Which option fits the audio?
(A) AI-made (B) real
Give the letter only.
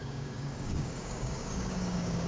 A